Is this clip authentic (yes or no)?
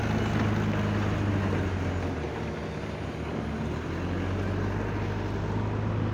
yes